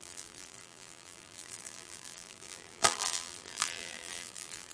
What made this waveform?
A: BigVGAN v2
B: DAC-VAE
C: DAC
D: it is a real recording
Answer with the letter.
A